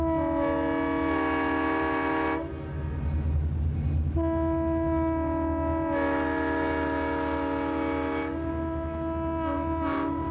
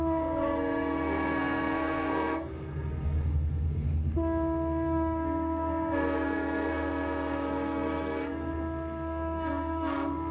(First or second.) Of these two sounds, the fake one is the second